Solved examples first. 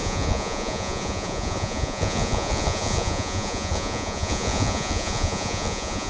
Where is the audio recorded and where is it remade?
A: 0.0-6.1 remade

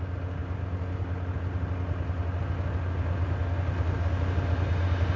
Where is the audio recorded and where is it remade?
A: 0.0-5.2 recorded

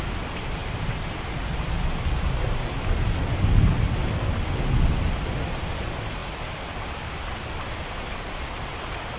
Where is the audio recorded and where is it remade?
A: 0.0-9.2 recorded

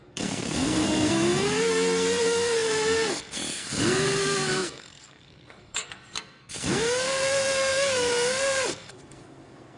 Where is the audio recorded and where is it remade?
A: 0.0-9.8 remade

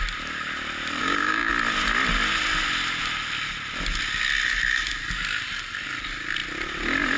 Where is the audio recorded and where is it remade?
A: 0.0-1.0 recorded; 1.0-1.5 remade; 1.5-7.2 recorded

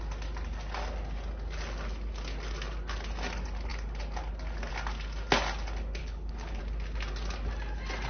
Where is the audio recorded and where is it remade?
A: 0.0-6.0 recorded; 6.0-6.6 remade; 6.6-8.1 recorded